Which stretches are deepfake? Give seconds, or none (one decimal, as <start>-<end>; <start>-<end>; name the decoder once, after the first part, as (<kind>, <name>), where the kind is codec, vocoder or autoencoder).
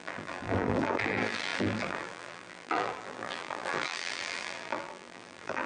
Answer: 0.0-5.7 (vocoder, BigVGAN v2)